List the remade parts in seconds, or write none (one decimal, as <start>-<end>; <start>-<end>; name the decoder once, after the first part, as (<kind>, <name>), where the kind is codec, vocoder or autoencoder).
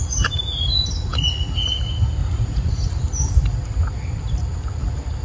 2.2-2.7 (vocoder, Vocos)